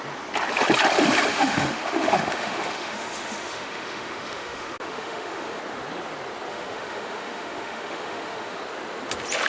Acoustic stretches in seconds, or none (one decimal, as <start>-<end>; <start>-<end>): 0.0-1.3; 5.6-6.5; 8.6-9.5